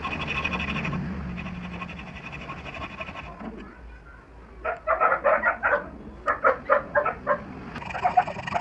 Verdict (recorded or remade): recorded